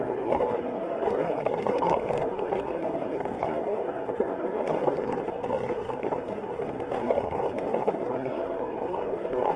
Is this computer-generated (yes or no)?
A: yes